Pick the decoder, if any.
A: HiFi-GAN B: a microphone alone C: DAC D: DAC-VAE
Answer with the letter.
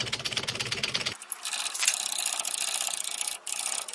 B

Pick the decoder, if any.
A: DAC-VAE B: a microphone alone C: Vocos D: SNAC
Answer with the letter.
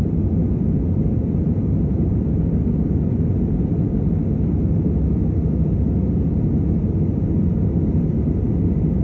B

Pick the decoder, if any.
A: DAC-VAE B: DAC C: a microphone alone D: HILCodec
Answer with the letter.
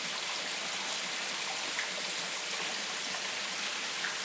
C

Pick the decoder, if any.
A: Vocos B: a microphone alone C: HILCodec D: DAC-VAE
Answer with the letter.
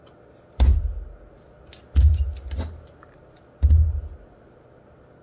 B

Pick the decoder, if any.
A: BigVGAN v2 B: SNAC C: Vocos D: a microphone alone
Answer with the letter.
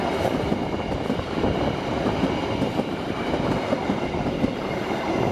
D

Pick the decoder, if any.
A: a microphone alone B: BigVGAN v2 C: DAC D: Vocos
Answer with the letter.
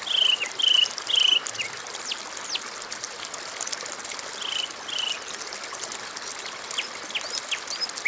A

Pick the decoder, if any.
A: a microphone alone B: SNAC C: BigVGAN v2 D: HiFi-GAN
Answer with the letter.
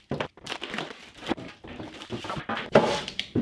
C